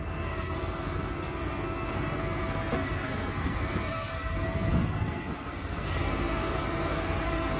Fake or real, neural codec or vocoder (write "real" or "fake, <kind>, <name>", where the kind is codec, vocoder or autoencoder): fake, codec, SNAC